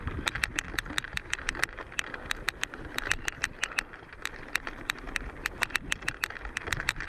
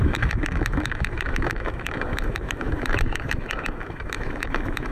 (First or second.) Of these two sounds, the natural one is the first